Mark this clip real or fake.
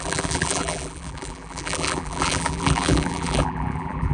fake